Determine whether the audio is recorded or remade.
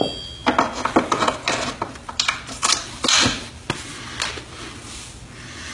recorded